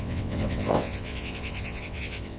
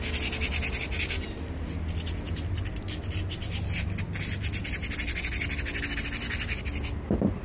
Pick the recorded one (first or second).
second